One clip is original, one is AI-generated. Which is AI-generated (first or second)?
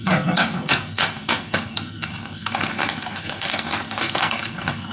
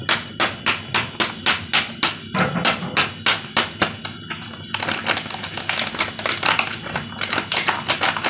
first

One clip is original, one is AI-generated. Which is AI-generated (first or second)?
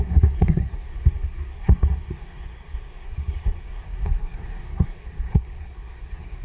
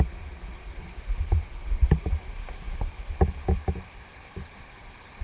first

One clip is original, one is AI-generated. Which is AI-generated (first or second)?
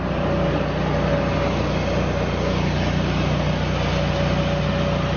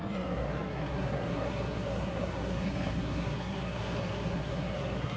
second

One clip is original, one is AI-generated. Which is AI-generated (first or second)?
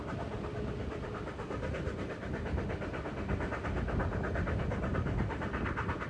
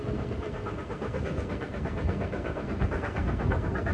second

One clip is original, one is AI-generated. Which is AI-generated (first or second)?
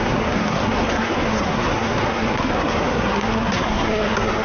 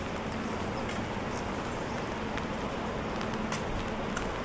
first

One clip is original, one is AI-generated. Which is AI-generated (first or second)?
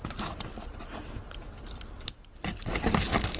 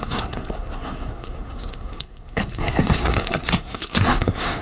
second